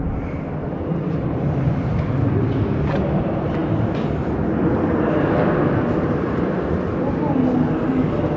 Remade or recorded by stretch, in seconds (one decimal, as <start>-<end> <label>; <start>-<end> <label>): 0.0-8.4 recorded